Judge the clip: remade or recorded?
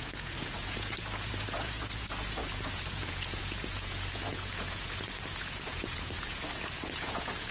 remade